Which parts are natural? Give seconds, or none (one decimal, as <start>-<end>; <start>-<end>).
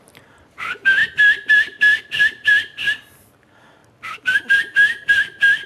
1.0-2.0; 3.8-4.6